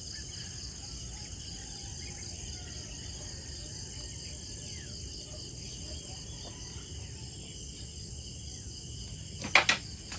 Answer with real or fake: real